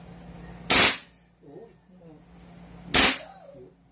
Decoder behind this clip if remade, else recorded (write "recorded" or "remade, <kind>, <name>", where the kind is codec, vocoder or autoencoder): recorded